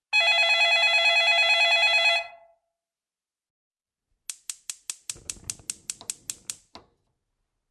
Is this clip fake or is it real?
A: real